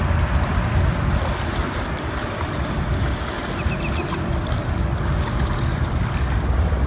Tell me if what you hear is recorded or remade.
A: recorded